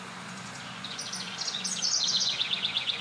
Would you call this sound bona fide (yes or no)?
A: no